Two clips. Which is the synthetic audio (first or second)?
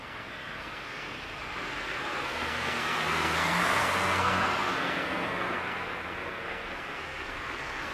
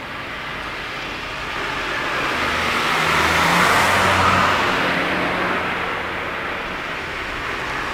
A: first